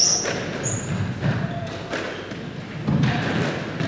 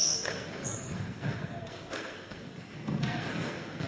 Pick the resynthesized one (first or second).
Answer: second